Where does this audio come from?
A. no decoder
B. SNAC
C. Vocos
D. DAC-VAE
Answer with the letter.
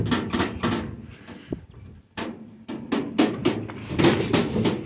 A